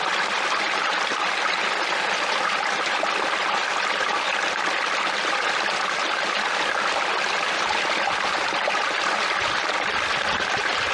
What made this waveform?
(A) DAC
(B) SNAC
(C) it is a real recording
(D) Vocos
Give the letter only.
C